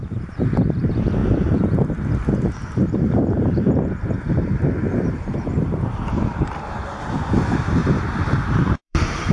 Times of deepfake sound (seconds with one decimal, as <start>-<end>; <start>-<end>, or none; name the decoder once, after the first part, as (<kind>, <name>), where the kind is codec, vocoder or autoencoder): 0.0-1.2 (vocoder, BigVGAN v2); 2.4-9.3